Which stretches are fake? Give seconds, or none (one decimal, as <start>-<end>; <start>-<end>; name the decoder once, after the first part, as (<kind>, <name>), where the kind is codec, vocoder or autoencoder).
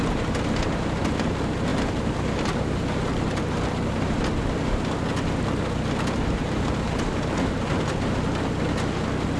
1.7-4.2 (vocoder, BigVGAN v2); 6.4-7.7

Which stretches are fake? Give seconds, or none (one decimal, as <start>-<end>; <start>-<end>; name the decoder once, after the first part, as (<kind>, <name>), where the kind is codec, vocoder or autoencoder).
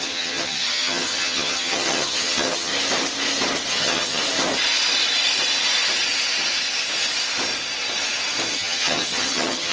0.0-2.7 (vocoder, HiFi-GAN); 3.7-4.2; 8.5-9.7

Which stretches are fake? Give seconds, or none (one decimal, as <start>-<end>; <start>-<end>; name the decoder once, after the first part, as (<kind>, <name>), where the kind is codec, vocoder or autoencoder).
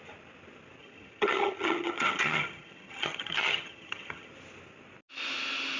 0.8-4.3 (vocoder, HiFi-GAN)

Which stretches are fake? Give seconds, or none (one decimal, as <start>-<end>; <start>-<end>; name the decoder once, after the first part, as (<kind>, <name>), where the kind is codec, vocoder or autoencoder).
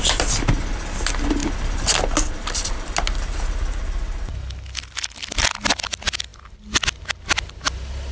none